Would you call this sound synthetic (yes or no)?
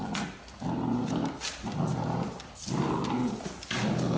no